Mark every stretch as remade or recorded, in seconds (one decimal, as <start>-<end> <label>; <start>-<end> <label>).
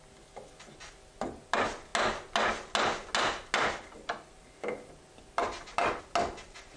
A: 0.0-6.8 recorded